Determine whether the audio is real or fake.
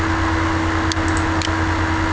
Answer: real